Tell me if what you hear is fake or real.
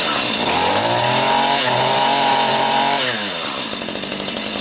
real